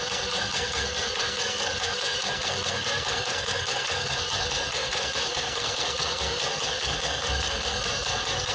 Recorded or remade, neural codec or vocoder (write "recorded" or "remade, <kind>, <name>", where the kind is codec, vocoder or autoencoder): remade, codec, SNAC